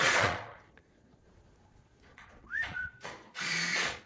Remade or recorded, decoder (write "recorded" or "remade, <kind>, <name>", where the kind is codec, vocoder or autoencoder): remade, vocoder, Vocos